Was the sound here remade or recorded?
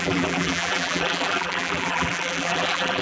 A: remade